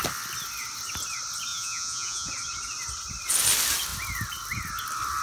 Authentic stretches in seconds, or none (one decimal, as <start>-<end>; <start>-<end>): 0.0-1.5; 2.3-5.2